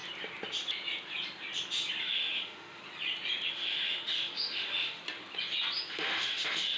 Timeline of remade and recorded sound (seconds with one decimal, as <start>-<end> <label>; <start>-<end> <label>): 0.0-2.0 recorded; 2.0-2.8 remade; 2.8-3.5 recorded; 3.5-5.0 remade; 5.0-5.9 recorded; 5.9-6.8 remade